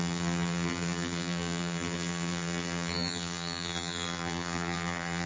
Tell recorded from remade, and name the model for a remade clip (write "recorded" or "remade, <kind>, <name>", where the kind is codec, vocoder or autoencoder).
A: remade, vocoder, BigVGAN v2